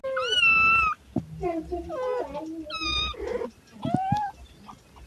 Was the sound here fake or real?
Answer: real